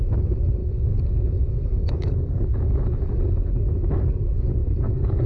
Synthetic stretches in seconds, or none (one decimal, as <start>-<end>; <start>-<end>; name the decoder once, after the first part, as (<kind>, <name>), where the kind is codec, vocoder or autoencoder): 0.6-3.5 (codec, DAC); 4.6-5.3